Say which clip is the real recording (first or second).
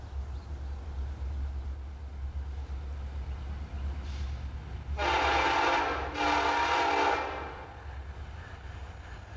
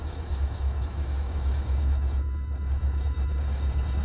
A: first